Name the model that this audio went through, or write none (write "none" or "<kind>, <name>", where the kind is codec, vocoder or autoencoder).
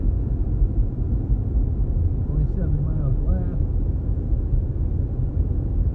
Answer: none